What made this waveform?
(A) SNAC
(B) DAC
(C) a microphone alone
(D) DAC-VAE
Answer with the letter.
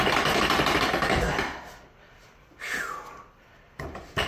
C